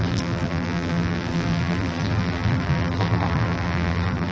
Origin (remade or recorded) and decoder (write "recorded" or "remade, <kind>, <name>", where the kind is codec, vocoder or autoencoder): remade, vocoder, BigVGAN v2